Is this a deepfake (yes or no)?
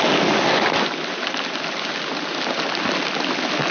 no